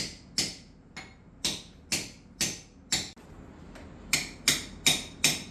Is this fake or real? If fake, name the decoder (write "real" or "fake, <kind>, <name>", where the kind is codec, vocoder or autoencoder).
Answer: real